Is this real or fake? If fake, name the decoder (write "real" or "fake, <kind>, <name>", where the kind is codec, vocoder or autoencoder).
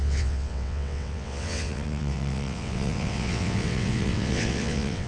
fake, vocoder, WaveNeXt